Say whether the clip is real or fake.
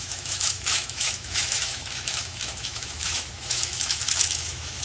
fake